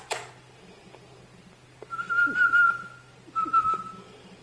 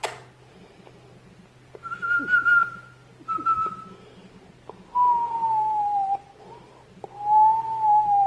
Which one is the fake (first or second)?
first